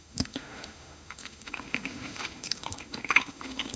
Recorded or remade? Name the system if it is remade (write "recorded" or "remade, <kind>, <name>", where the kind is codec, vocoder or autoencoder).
remade, autoencoder, DAC-VAE